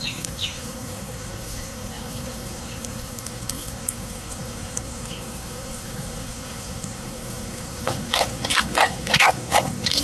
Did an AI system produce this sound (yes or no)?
yes